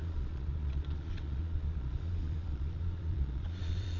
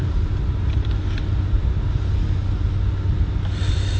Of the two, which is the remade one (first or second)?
first